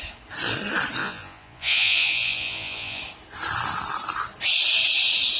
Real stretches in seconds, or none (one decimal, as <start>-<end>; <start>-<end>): 0.0-1.0; 3.0-5.4

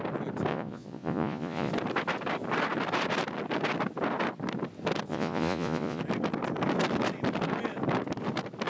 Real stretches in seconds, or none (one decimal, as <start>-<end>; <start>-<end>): 0.0-0.5; 1.7-5.1; 6.0-8.7

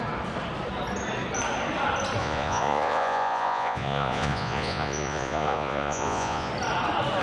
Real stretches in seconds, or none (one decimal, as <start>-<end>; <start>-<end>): 0.0-2.2; 6.5-7.2

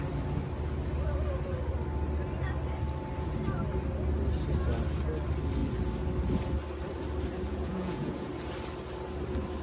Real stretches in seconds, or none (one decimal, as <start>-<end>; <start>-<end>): 0.0-7.5; 8.3-9.6

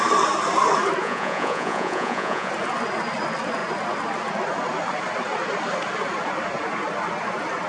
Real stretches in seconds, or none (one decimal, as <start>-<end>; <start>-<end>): 0.0-1.0; 2.5-7.7

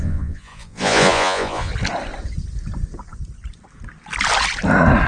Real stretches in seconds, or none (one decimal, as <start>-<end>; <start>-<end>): 1.7-5.1